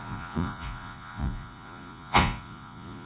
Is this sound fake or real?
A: fake